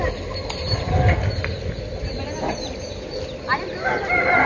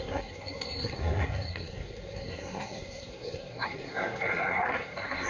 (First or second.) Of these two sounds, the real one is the first